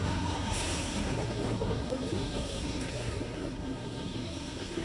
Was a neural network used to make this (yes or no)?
yes